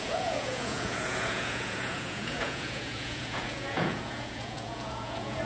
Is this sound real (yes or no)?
no